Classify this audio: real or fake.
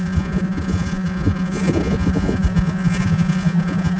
fake